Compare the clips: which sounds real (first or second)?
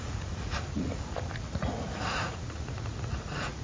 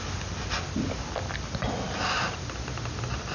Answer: second